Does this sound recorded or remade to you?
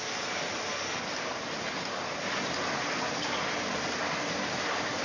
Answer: recorded